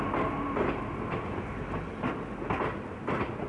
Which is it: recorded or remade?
recorded